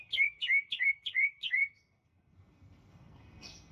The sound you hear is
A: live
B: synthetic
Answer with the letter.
B